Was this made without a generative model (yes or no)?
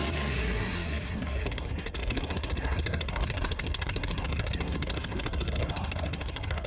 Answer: no